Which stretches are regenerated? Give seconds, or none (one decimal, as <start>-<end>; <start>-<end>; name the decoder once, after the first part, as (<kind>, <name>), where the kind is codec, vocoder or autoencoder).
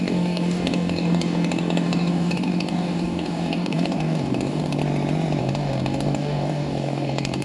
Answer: 0.0-4.8 (codec, DAC); 5.4-7.4